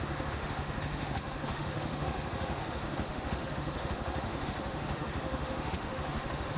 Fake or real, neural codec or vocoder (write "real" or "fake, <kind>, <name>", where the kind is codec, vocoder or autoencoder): fake, autoencoder, DAC-VAE